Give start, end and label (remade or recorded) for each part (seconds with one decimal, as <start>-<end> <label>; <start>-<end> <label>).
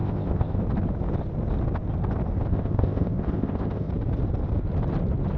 0.0-0.6 remade; 0.6-2.5 recorded; 2.5-3.9 remade; 3.9-5.4 recorded